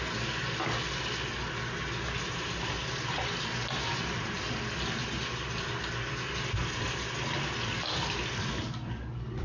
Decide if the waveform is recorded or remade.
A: recorded